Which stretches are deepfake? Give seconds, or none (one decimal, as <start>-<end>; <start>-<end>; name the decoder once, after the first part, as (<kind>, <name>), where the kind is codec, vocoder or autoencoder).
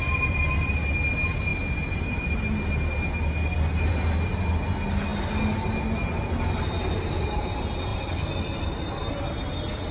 none